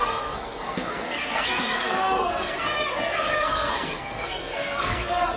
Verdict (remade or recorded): remade